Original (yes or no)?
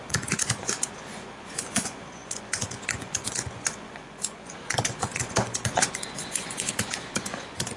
no